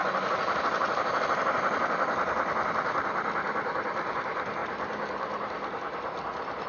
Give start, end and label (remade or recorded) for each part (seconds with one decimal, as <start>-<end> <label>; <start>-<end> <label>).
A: 0.0-1.2 remade; 1.2-6.7 recorded